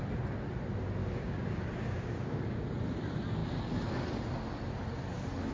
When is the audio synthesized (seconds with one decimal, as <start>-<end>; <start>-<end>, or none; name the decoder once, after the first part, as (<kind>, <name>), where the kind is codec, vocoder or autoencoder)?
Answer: 1.0-2.6 (codec, DAC)